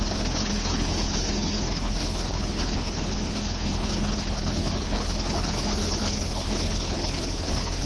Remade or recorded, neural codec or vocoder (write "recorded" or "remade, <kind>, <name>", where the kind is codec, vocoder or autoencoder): remade, codec, HILCodec